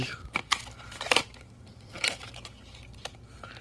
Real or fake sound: real